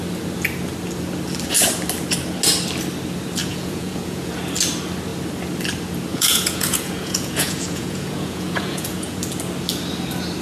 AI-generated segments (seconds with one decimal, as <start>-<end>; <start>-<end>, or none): 3.4-4.3; 6.1-9.2